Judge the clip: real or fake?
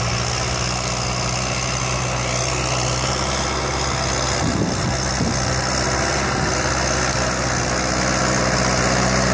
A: real